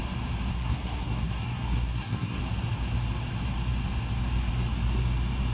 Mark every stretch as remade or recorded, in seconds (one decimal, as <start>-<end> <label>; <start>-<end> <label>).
0.0-0.5 recorded; 0.5-2.4 remade; 2.4-5.5 recorded